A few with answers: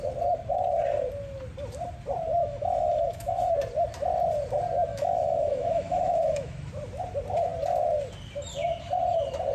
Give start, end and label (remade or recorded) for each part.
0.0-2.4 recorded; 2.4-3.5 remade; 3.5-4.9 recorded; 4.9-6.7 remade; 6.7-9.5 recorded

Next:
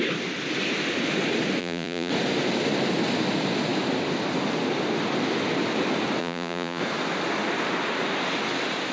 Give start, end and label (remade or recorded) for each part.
0.0-1.6 recorded; 1.6-2.1 remade; 2.1-6.2 recorded; 6.2-6.8 remade; 6.8-8.9 recorded

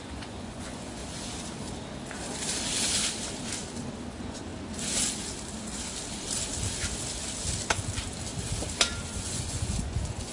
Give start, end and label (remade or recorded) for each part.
0.0-1.0 remade; 1.0-4.1 recorded; 4.1-4.5 remade; 4.5-9.2 recorded; 9.2-10.3 remade

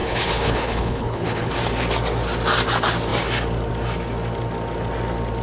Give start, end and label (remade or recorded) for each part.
0.0-1.5 remade; 1.5-5.4 recorded

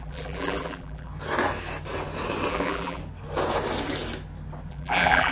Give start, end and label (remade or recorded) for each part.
0.0-1.1 remade; 1.1-2.5 recorded; 2.5-3.0 remade; 3.0-4.7 recorded; 4.7-5.3 remade

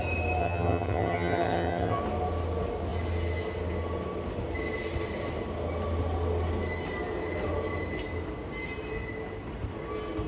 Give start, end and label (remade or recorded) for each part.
0.0-0.4 recorded; 0.4-2.0 remade; 2.0-10.3 recorded

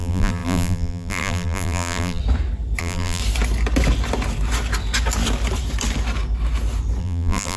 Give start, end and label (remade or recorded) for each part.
0.0-2.2 remade; 2.2-2.8 recorded; 2.8-3.2 remade; 3.2-7.0 recorded; 7.0-7.6 remade